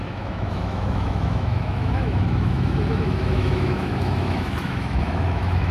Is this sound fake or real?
fake